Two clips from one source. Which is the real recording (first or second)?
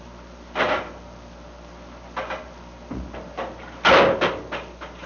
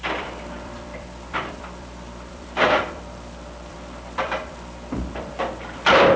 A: first